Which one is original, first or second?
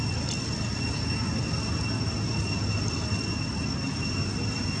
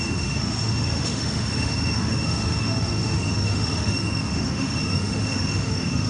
first